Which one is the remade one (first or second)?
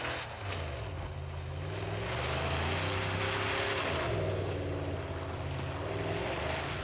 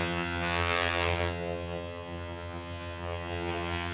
second